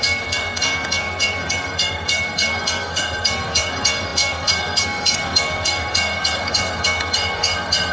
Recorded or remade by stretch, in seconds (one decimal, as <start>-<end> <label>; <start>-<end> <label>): 0.0-7.9 remade